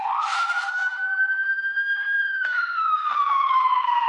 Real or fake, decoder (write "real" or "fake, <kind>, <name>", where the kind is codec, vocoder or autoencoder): fake, autoencoder, DAC-VAE